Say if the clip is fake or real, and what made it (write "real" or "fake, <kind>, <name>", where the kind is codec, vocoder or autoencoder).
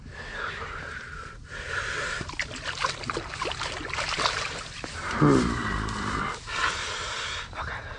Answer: real